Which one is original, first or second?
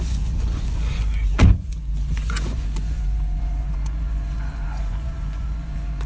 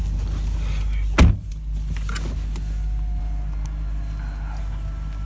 second